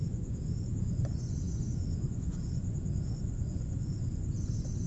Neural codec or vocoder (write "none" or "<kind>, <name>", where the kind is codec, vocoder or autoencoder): vocoder, Vocos